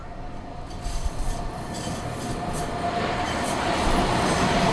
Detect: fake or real real